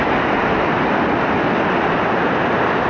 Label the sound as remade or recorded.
recorded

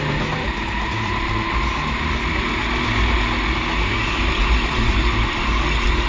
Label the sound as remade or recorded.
recorded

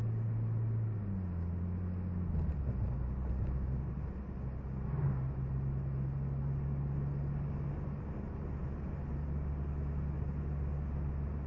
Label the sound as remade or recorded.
recorded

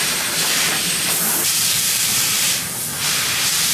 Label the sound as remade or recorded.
remade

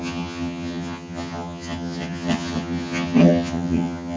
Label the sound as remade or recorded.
remade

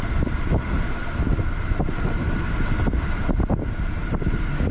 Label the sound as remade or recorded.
recorded